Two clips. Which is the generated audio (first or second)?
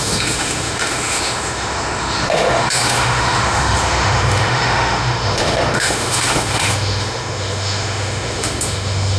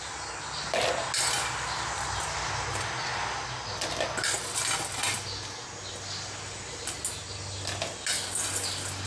first